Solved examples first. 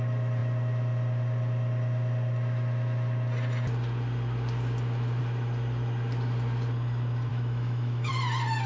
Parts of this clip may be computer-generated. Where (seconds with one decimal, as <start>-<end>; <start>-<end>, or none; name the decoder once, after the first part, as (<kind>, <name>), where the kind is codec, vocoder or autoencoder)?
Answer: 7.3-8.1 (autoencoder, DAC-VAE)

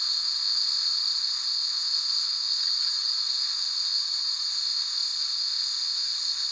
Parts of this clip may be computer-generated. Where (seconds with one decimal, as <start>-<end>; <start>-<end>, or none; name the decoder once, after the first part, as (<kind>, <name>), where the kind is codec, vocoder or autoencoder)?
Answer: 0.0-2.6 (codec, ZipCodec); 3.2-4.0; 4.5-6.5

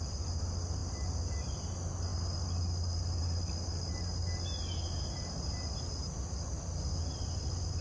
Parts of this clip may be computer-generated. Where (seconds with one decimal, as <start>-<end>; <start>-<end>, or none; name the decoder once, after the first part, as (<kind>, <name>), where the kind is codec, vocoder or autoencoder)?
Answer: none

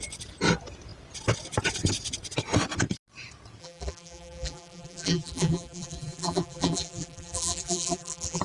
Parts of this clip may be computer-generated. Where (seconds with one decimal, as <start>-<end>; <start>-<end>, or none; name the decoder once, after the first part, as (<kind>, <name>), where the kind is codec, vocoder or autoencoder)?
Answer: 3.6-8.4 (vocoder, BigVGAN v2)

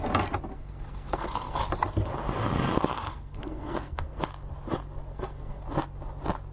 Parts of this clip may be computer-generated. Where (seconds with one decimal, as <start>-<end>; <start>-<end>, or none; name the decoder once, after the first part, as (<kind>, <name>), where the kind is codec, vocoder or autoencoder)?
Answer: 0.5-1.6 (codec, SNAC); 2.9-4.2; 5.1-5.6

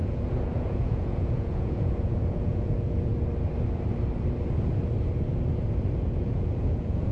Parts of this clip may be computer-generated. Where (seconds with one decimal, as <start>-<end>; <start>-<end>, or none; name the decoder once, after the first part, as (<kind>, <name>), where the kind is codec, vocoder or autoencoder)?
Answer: 0.0-3.1 (vocoder, Vocos); 6.2-7.1